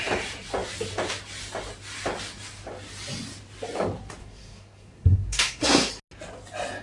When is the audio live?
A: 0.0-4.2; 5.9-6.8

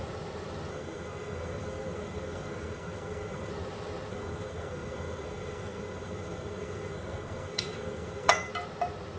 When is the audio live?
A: 0.0-0.7; 3.5-4.1; 8.5-9.2

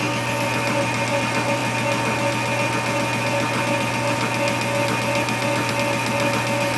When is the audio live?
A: 0.0-6.8

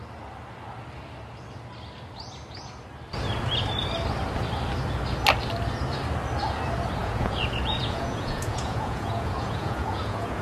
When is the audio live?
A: 0.0-7.0

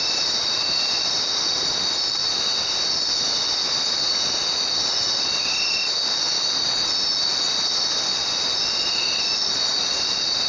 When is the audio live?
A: 0.0-10.5

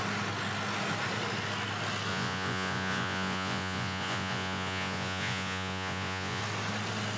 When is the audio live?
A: 0.0-2.1; 6.4-7.2